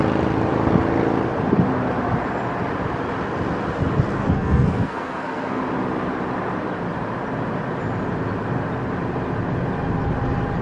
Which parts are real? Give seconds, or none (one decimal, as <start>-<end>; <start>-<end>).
0.0-4.2; 5.6-10.6